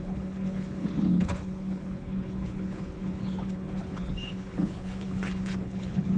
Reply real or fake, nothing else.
fake